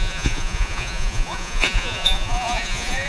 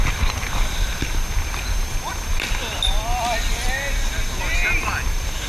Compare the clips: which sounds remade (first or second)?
first